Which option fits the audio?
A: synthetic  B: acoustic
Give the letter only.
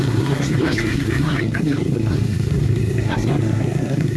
A